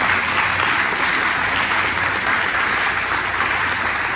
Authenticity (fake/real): real